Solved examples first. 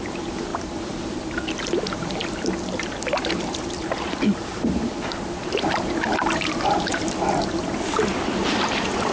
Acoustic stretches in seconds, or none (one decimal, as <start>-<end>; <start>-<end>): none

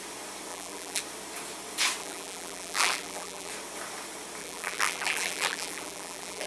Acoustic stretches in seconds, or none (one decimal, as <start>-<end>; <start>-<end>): 0.0-0.5; 1.0-2.0; 3.5-4.4

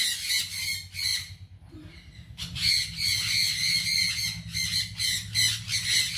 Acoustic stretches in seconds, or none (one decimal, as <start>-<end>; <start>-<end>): 0.0-6.2

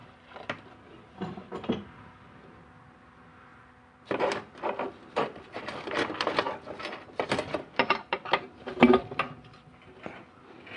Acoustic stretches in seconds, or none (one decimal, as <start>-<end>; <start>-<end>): 1.1-3.5; 8.4-10.8